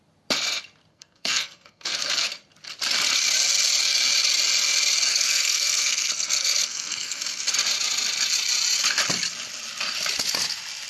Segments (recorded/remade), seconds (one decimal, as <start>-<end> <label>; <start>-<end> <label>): 0.0-0.9 recorded; 0.9-2.3 remade; 2.3-5.1 recorded; 5.1-7.2 remade; 7.2-10.9 recorded

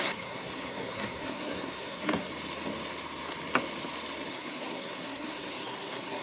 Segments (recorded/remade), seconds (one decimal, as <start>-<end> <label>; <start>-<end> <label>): 0.0-2.3 remade; 2.3-4.3 recorded; 4.3-6.2 remade

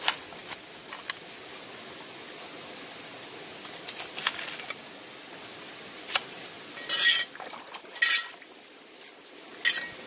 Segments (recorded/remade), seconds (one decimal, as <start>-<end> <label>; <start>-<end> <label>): 0.0-10.1 recorded

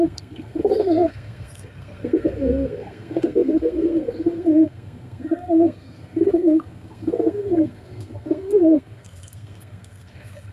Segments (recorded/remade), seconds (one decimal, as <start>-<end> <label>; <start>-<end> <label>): 0.0-10.5 remade

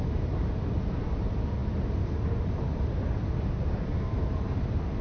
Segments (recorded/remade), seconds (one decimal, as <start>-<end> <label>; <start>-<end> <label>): 0.0-5.0 recorded

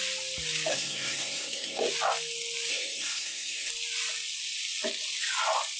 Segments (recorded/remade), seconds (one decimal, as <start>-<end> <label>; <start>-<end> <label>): 0.0-0.7 recorded; 0.7-1.8 remade; 1.8-2.7 recorded; 2.7-3.7 remade; 3.7-5.8 recorded